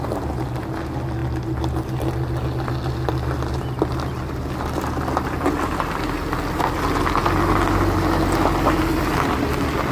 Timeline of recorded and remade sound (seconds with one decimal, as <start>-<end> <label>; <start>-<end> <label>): 0.0-9.9 recorded